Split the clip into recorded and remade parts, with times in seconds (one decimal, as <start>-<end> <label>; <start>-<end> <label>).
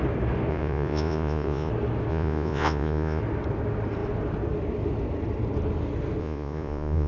0.0-0.5 recorded; 0.5-1.7 remade; 1.7-2.1 recorded; 2.1-3.2 remade; 3.2-6.2 recorded; 6.2-7.1 remade